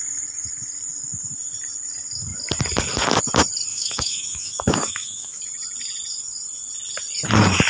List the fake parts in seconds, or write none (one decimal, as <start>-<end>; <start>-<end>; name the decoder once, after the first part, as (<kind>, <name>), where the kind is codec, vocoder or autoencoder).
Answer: 3.7-5.4 (autoencoder, DAC-VAE)